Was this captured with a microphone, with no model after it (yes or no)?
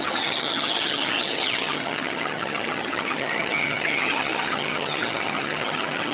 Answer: no